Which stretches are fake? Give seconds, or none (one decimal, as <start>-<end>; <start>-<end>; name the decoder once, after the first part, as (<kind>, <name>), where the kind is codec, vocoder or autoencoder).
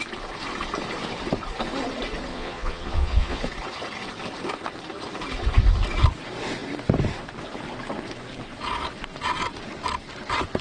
2.3-3.4 (vocoder, Vocos)